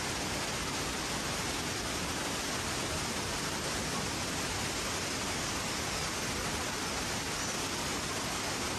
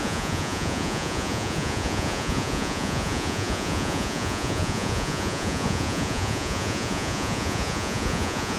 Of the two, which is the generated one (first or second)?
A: second